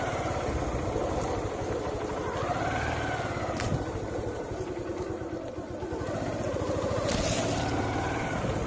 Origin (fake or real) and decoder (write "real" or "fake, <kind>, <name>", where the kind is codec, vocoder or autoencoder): real